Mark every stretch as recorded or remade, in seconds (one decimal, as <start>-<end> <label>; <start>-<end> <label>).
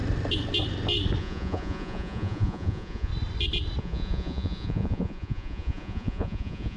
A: 0.0-1.2 recorded; 1.2-3.1 remade; 3.1-3.8 recorded; 3.8-6.8 remade